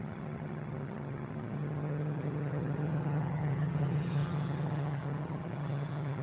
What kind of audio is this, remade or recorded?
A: remade